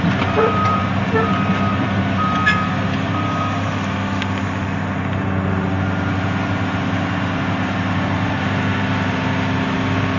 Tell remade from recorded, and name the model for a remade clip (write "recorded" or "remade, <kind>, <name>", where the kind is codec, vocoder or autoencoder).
recorded